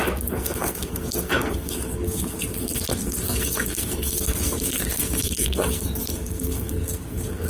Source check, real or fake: fake